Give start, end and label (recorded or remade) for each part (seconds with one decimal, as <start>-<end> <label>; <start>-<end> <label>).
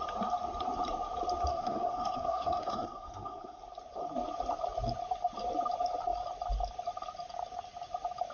0.0-1.5 recorded; 1.5-3.6 remade; 3.6-8.3 recorded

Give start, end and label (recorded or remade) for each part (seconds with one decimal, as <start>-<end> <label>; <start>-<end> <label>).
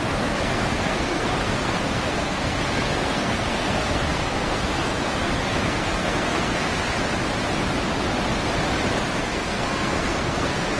0.0-6.7 remade; 6.7-9.2 recorded; 9.2-10.8 remade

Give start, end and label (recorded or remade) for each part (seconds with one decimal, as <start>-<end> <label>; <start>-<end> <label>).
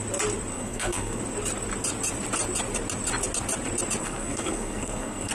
0.0-0.5 recorded; 0.5-1.2 remade; 1.2-4.0 recorded; 4.0-5.3 remade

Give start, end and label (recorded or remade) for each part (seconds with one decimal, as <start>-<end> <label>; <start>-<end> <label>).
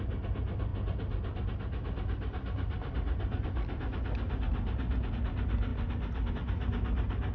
0.0-7.3 recorded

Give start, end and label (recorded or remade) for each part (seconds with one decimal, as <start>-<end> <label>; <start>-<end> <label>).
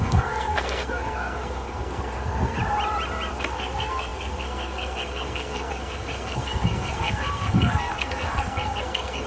0.0-2.6 remade; 2.6-3.3 recorded; 3.3-9.3 remade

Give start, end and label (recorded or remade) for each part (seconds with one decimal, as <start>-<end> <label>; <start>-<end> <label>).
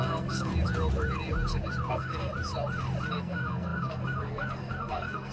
0.0-0.5 remade; 0.5-1.9 recorded; 1.9-2.3 remade; 2.3-3.1 recorded; 3.1-5.3 remade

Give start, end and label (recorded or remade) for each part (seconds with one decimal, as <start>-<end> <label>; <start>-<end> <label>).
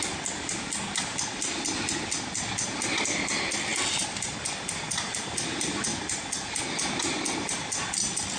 0.0-8.4 recorded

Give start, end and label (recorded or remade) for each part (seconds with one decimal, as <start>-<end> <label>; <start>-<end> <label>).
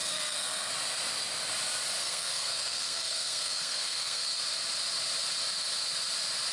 0.0-0.7 remade; 0.7-2.0 recorded; 2.0-4.4 remade; 4.4-6.5 recorded